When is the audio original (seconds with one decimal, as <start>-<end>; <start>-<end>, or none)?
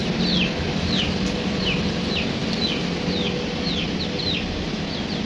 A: 0.0-5.3